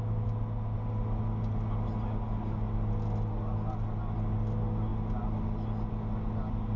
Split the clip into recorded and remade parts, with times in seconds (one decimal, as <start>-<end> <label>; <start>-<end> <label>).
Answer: 0.0-6.8 recorded